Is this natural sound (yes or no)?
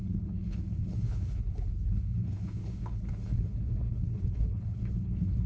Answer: no